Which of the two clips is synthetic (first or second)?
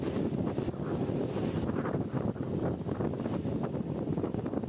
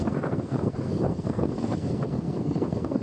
second